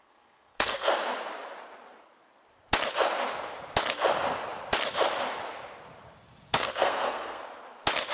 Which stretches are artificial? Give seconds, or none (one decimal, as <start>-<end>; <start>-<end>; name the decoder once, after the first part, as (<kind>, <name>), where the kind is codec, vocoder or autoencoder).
0.0-0.9 (codec, SNAC); 6.5-7.4